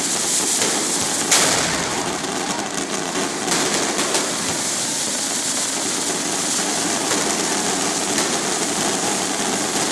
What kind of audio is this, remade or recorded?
recorded